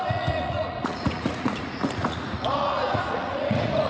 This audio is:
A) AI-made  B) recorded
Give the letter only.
A